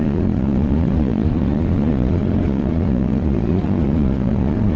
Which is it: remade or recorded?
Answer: remade